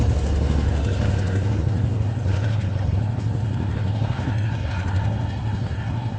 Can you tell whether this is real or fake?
fake